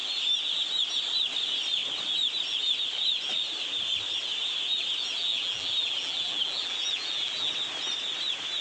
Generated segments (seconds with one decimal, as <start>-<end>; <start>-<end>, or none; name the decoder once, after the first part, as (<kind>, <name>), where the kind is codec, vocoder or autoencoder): 5.2-7.5 (vocoder, BigVGAN v2)